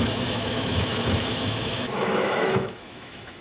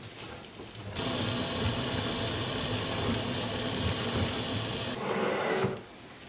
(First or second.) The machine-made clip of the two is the first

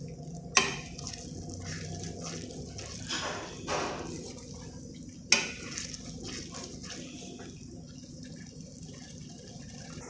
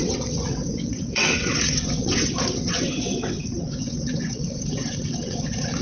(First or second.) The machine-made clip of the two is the second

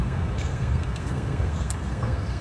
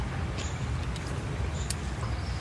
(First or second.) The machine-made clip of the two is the first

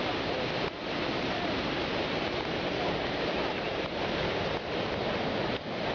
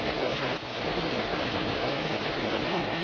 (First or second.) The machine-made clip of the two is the second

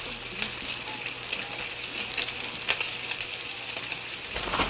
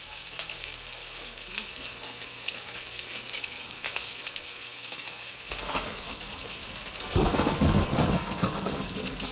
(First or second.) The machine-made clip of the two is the second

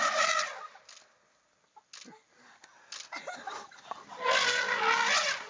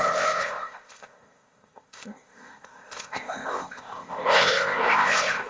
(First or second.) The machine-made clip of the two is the second